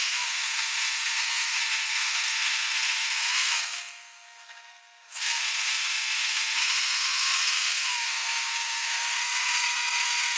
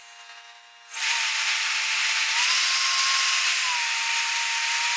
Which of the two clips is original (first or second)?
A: second